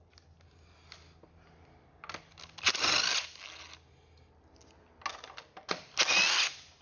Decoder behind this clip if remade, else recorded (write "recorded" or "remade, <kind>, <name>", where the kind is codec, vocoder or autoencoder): recorded